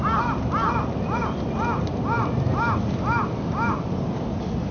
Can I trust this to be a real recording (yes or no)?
yes